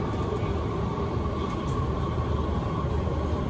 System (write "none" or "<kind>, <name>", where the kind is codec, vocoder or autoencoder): none